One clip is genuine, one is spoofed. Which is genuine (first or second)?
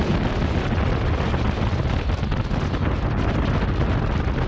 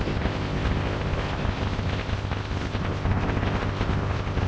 first